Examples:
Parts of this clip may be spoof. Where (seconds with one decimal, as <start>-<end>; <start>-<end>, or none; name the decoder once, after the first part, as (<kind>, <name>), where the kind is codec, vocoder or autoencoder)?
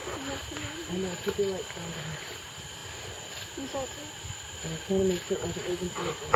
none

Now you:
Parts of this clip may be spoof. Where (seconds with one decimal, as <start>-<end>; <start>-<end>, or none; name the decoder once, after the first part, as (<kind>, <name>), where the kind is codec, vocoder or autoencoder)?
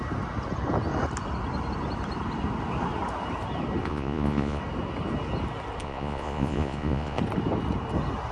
3.8-4.6 (vocoder, Vocos); 5.8-7.2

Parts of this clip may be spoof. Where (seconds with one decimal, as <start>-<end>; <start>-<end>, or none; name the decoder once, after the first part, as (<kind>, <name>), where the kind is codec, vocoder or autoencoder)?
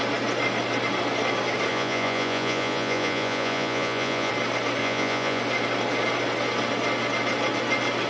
1.7-4.3 (vocoder, Vocos); 4.8-5.4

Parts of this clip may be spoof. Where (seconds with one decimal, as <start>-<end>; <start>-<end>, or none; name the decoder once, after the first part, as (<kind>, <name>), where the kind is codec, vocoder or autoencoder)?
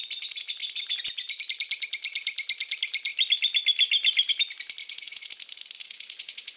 4.8-5.3 (vocoder, Vocos); 5.8-6.6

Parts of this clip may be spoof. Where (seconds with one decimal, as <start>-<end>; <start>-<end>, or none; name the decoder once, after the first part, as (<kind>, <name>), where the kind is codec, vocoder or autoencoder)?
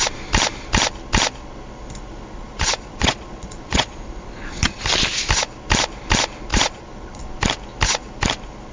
2.1-4.8 (vocoder, Vocos); 6.5-7.2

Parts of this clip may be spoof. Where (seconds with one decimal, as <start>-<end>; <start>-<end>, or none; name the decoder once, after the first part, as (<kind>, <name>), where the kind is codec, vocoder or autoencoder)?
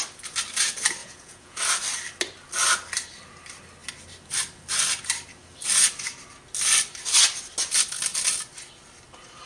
1.0-1.6 (vocoder, Vocos)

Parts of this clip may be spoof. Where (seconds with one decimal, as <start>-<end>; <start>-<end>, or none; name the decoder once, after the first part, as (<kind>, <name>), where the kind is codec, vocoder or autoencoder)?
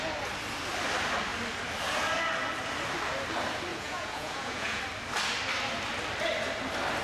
3.7-4.8 (vocoder, Vocos)